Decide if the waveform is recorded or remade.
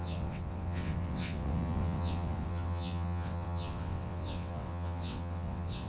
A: remade